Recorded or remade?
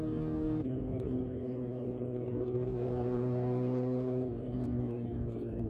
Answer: remade